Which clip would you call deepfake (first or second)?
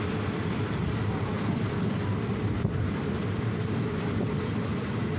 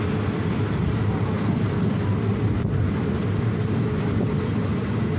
first